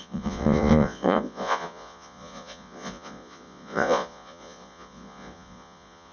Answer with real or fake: fake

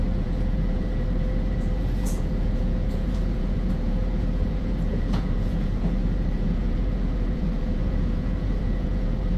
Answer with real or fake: fake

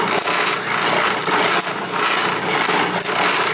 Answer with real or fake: real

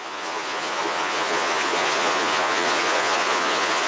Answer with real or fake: fake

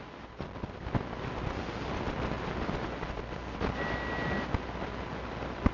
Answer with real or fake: real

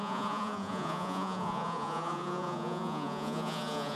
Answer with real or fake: fake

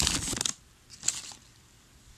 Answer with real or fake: real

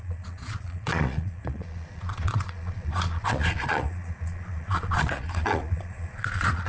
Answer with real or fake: fake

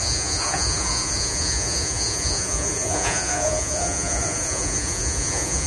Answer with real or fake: fake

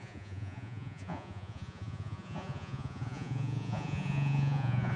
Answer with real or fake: fake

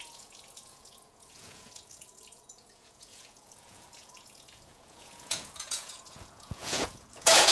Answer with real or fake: fake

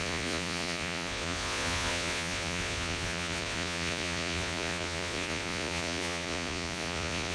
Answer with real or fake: fake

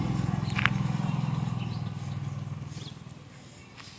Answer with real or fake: real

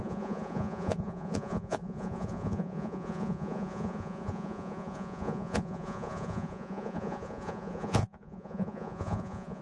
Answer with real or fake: fake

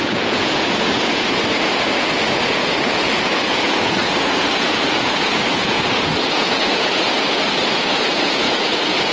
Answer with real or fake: fake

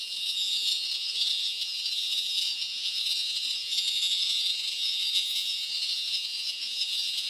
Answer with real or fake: fake